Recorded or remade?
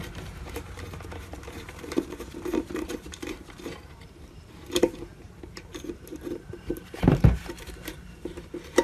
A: remade